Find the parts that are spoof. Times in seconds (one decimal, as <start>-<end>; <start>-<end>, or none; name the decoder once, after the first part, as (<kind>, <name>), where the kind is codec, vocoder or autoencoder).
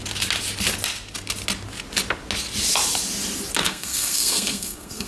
3.6-5.1 (codec, SNAC)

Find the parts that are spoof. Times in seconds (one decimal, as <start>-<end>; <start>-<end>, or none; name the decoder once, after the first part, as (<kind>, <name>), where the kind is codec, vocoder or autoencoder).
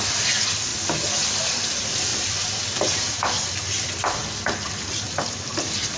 none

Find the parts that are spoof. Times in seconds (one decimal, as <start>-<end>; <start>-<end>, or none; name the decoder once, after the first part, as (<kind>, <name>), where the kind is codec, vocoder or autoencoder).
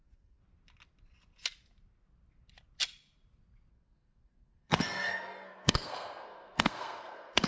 0.0-0.4 (codec, SNAC); 3.7-7.5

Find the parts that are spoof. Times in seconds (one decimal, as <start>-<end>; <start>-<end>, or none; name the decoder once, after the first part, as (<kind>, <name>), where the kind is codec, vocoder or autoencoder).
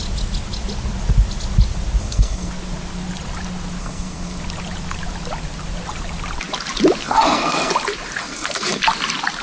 2.0-2.5 (codec, SNAC); 3.8-4.4; 7.0-7.7; 8.2-8.8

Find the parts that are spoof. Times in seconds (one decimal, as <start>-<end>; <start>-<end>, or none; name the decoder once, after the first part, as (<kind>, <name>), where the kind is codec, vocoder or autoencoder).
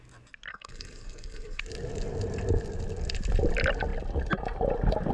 0.5-1.6 (codec, SNAC)